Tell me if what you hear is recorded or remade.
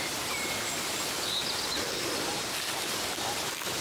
recorded